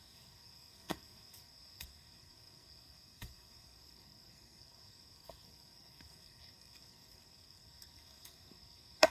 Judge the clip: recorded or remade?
remade